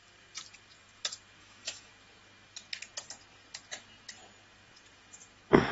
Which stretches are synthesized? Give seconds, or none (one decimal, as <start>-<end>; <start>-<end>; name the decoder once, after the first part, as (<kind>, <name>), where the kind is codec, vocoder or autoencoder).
1.4-1.9 (autoencoder, DAC-VAE)